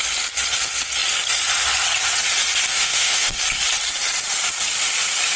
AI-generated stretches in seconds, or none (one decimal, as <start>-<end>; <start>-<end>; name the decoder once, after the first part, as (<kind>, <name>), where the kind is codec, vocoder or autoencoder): 2.7-3.4 (autoencoder, DAC-VAE)